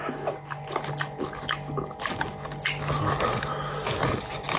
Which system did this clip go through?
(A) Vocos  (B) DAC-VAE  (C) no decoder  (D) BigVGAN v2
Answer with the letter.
C